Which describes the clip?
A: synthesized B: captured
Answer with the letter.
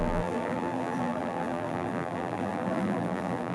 A